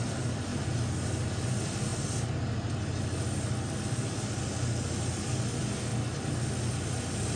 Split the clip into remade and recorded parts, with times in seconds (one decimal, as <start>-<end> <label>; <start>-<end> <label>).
0.0-0.5 remade; 0.5-1.1 recorded; 1.1-1.9 remade; 1.9-5.0 recorded; 5.0-5.9 remade; 5.9-6.6 recorded; 6.6-7.4 remade